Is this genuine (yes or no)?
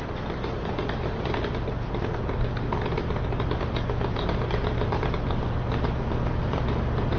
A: yes